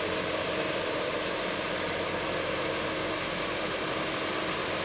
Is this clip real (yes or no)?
yes